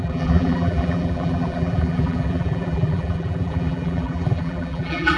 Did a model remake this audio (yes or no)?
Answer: yes